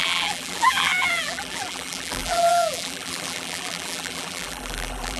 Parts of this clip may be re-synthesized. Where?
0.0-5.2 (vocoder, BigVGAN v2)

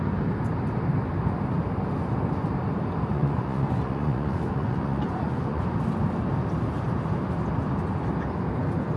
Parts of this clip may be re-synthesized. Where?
3.1-5.6 (vocoder, Vocos)

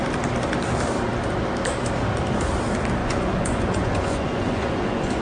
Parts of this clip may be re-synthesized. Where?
3.0-5.2 (vocoder, Vocos)

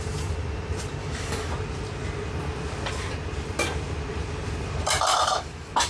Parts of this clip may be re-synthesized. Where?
1.0-1.5 (autoencoder, DAC-VAE); 5.1-5.9

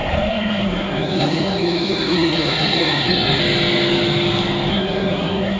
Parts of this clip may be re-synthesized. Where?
0.0-3.4 (codec, SNAC); 4.7-5.6

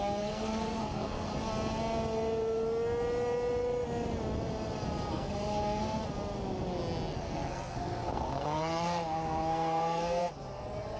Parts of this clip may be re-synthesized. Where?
0.0-1.3 (codec, SNAC); 5.1-6.0; 7.1-10.2

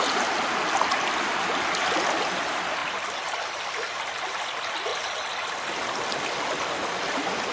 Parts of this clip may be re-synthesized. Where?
0.0-4.9 (vocoder, BigVGAN v2); 7.0-7.5

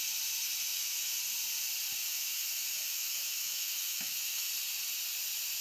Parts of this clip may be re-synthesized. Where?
0.7-1.2 (autoencoder, DAC-VAE); 2.0-4.5